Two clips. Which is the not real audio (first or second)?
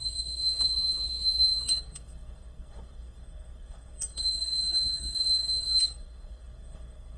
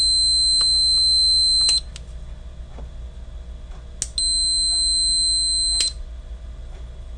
first